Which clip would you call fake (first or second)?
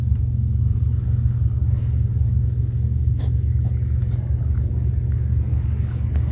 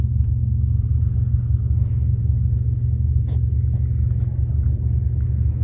first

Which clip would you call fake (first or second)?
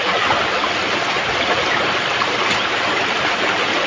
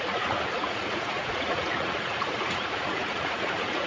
second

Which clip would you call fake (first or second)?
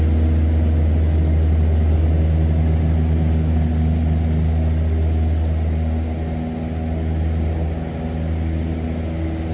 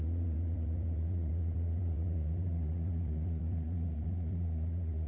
second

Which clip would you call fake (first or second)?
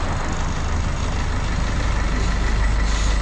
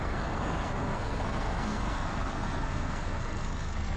second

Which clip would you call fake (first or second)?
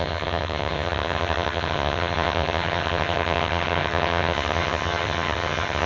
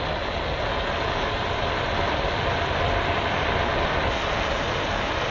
first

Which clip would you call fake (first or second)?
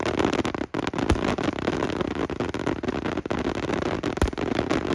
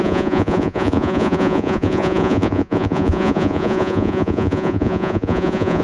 second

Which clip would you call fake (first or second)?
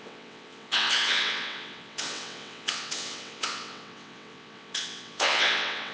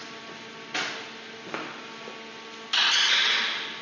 first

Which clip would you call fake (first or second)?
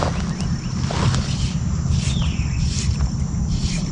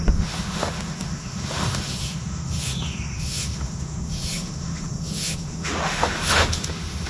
second